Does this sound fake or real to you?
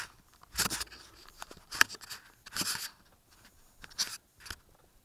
real